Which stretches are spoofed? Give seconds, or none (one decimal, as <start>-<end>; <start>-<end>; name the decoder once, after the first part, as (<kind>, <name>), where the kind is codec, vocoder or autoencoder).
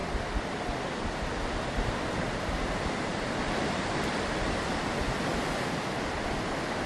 3.1-4.6 (vocoder, BigVGAN v2); 5.3-6.9